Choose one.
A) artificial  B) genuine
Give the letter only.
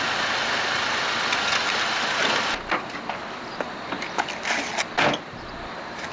B